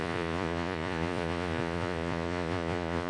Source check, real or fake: fake